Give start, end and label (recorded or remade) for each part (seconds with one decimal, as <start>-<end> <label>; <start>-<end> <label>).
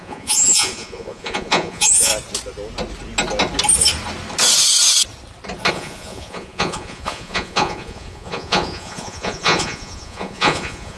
0.0-2.1 remade; 2.1-5.7 recorded; 5.7-11.0 remade